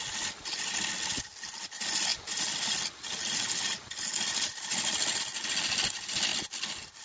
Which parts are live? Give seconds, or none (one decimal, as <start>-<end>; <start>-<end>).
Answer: 0.0-7.0